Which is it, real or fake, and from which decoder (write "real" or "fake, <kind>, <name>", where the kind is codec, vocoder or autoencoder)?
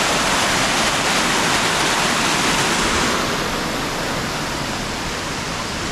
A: real